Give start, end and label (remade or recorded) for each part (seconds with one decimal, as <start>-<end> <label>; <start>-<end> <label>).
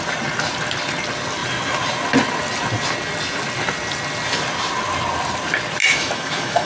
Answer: 0.0-5.8 recorded; 5.8-6.7 remade